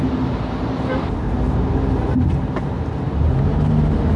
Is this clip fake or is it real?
real